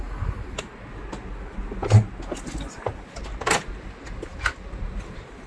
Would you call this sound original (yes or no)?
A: yes